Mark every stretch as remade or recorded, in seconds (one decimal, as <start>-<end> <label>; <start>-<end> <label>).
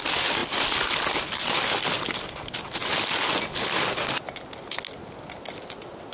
0.0-6.1 recorded